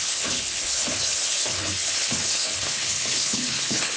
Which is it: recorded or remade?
remade